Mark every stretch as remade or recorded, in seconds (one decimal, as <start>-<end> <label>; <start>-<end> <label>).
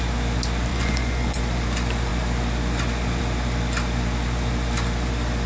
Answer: 0.0-0.7 recorded; 0.7-1.4 remade; 1.4-5.5 recorded